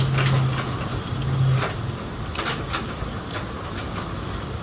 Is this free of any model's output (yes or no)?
yes